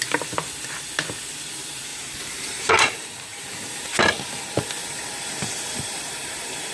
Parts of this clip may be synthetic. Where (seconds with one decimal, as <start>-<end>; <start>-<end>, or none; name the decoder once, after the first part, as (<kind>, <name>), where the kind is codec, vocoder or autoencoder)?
1.9-3.5 (vocoder, BigVGAN v2); 4.8-6.7